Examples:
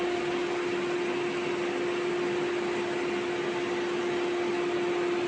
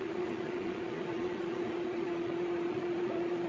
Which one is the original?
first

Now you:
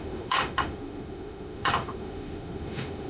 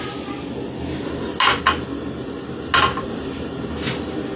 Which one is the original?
second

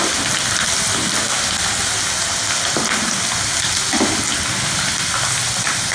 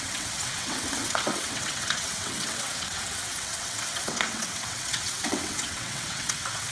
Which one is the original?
first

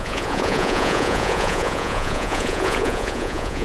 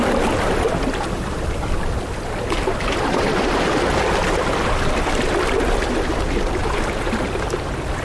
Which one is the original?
second